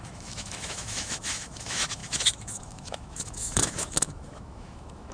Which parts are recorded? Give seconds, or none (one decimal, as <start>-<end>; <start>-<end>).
none